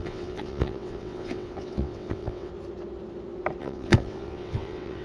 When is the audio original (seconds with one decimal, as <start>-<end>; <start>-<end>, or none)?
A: 2.5-3.6